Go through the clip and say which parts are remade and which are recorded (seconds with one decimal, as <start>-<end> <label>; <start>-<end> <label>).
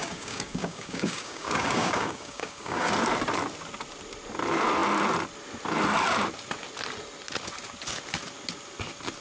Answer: 0.0-2.9 remade; 2.9-9.2 recorded